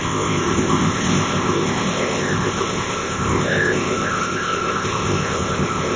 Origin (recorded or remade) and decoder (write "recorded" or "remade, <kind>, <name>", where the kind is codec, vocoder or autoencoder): remade, codec, ZipCodec